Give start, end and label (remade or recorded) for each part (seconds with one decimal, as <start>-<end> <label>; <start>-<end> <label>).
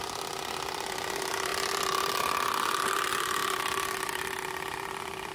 0.0-5.3 recorded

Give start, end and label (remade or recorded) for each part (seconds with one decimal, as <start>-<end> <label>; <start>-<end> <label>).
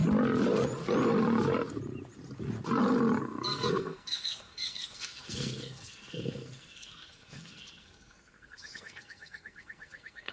0.0-3.2 recorded; 3.2-10.3 remade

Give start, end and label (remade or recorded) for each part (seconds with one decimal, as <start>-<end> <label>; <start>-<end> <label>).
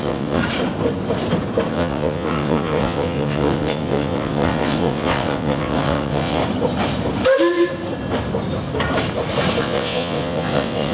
0.0-0.4 remade; 0.4-1.7 recorded; 1.7-6.4 remade; 6.4-9.6 recorded; 9.6-10.9 remade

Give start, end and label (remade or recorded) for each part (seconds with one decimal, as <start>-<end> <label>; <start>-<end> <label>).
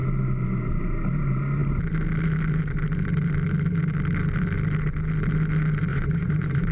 0.0-5.9 recorded; 5.9-6.7 remade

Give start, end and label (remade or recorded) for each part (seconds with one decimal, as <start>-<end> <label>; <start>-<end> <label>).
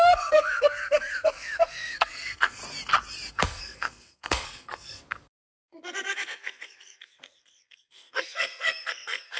0.0-2.6 remade; 2.6-3.3 recorded; 3.3-9.4 remade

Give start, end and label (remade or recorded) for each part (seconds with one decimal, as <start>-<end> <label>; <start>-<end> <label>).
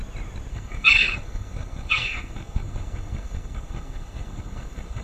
0.0-0.5 recorded; 0.5-5.0 remade